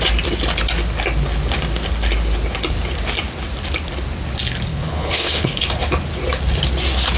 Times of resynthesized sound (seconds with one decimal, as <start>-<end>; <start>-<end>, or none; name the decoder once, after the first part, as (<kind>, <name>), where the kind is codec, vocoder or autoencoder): 4.7-5.6 (codec, HILCodec)